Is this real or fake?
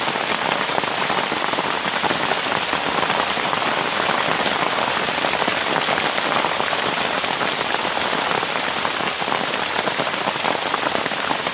real